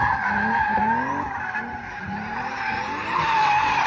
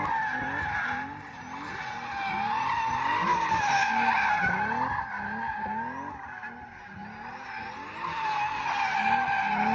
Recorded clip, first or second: second